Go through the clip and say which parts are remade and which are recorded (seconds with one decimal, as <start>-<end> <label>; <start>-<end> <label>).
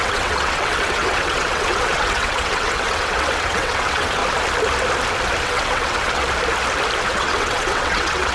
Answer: 0.0-4.2 remade; 4.2-5.4 recorded; 5.4-6.2 remade; 6.2-7.1 recorded; 7.1-8.3 remade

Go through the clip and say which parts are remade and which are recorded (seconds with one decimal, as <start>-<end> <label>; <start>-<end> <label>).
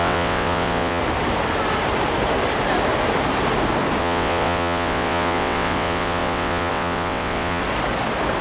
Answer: 0.0-1.0 remade; 1.0-4.0 recorded; 4.0-7.6 remade; 7.6-8.4 recorded